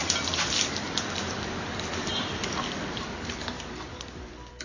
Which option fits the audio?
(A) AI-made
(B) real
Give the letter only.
A